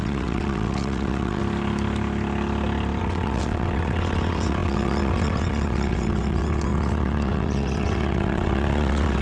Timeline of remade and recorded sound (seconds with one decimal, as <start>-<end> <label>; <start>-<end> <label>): 0.0-1.4 remade; 1.4-3.0 recorded; 3.0-9.2 remade